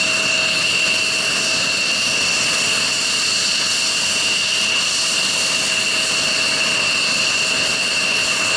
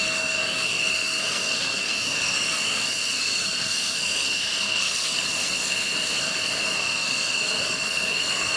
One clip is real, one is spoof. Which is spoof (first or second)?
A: second